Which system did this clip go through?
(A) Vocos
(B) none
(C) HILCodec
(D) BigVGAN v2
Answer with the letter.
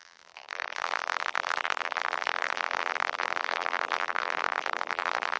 D